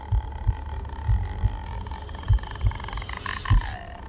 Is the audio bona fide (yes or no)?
yes